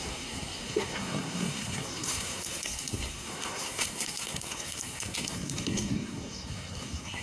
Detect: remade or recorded remade